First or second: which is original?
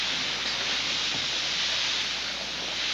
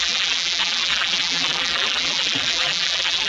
first